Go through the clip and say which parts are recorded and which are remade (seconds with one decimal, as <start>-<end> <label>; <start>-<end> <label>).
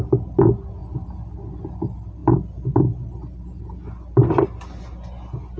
0.0-5.6 recorded